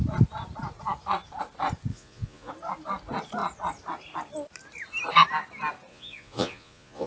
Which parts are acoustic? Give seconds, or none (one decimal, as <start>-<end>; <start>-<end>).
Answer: 0.0-1.9; 2.5-5.9